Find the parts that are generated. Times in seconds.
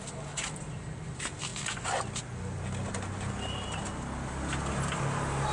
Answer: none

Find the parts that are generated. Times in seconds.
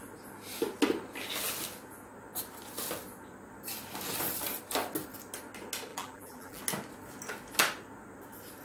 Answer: 5.9-6.6 (vocoder, BigVGAN v2)